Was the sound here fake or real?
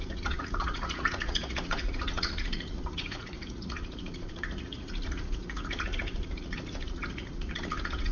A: fake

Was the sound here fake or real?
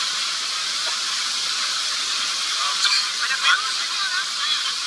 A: real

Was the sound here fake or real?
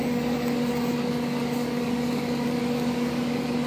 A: fake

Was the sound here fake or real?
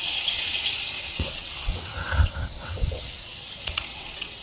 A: fake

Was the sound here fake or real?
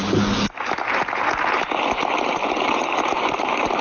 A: real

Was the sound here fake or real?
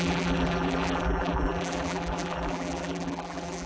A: fake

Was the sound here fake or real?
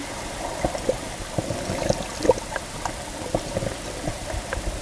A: real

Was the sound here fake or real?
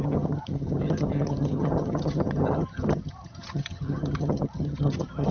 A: fake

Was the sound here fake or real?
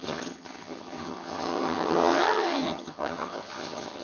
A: fake